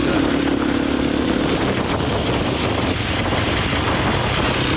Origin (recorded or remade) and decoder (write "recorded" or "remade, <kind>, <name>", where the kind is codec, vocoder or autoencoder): recorded